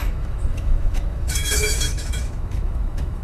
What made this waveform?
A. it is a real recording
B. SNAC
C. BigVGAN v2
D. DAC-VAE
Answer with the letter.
D